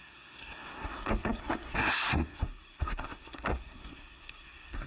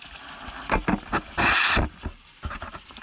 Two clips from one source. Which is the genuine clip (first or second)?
second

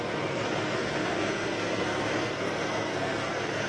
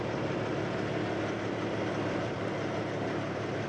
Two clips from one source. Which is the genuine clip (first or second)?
second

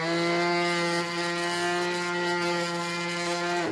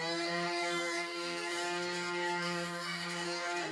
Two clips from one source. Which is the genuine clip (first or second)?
first